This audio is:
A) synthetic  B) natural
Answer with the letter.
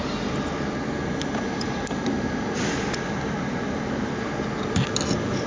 B